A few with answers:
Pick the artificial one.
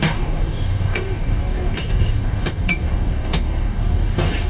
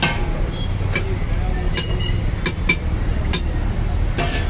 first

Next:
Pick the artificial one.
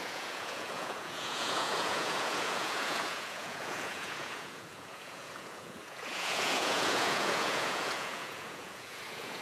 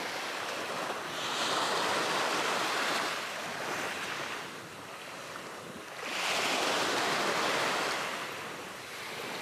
first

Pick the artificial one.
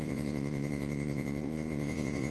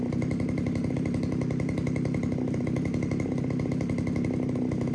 first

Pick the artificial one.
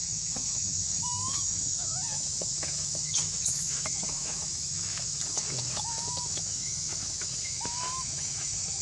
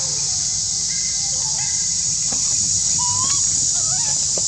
first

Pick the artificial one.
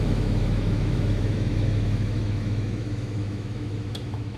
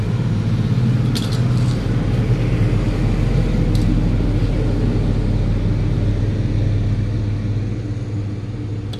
first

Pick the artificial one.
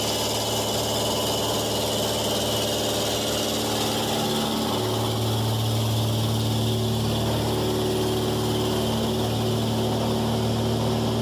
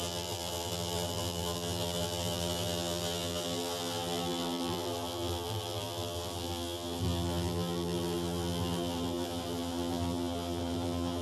second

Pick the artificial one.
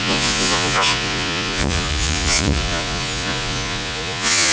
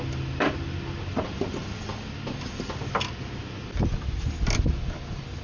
first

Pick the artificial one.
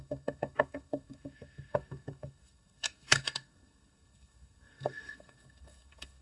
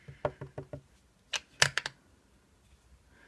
first